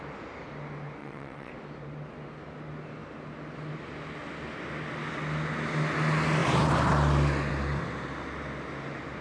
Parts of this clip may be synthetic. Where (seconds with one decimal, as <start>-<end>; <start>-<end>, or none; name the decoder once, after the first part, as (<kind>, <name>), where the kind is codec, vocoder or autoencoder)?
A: 1.0-1.5 (vocoder, WaveNeXt)